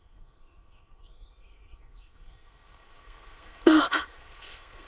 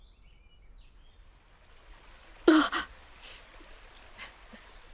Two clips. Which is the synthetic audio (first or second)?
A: first